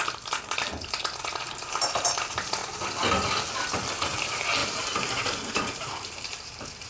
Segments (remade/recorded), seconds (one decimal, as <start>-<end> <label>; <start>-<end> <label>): 0.0-2.6 remade; 2.6-3.9 recorded; 3.9-6.9 remade